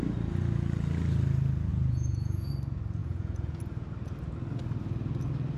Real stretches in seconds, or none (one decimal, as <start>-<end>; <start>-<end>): 0.0-1.7; 2.5-3.0; 3.6-5.6